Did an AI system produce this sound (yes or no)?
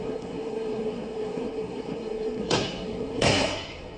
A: yes